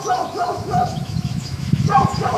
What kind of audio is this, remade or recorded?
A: remade